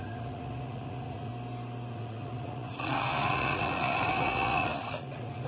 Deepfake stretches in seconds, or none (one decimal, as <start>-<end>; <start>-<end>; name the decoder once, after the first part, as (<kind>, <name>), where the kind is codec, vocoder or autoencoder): 0.0-1.3 (vocoder, Vocos); 1.9-5.5